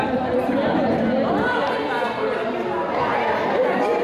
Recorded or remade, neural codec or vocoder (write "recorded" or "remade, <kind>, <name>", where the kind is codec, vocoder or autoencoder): recorded